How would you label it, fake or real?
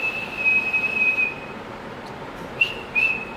real